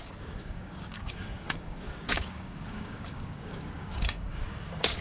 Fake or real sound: fake